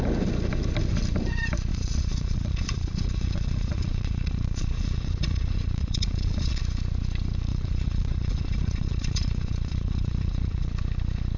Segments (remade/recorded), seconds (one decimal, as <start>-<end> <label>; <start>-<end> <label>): 0.0-1.7 recorded; 1.7-6.6 remade; 6.6-7.5 recorded; 7.5-10.7 remade; 10.7-11.4 recorded